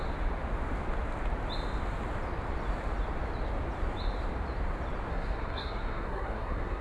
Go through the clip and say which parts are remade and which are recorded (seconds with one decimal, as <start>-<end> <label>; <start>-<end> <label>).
0.0-5.1 recorded; 5.1-6.8 remade